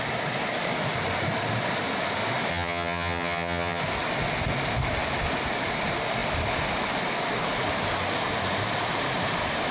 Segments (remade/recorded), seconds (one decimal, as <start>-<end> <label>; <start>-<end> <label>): 0.0-2.5 recorded; 2.5-3.8 remade; 3.8-9.7 recorded